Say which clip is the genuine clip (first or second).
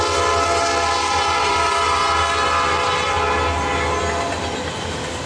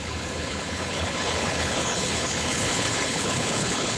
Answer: first